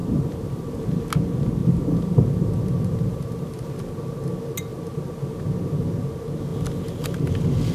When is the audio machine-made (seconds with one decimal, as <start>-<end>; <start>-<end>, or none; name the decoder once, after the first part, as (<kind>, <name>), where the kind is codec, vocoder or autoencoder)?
0.0-1.0 (vocoder, BigVGAN v2); 1.6-3.8